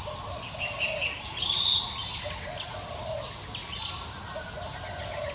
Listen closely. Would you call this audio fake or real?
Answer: real